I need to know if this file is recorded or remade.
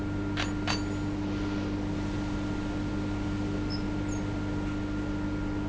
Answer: recorded